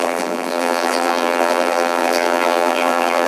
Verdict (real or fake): fake